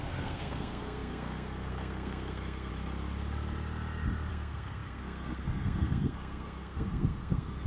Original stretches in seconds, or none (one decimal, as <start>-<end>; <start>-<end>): 2.7-4.3